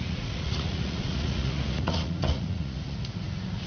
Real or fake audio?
fake